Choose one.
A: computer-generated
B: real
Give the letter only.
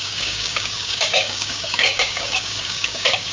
A